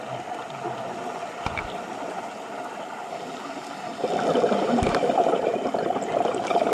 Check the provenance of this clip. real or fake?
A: real